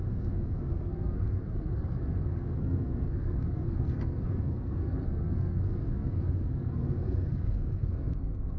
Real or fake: fake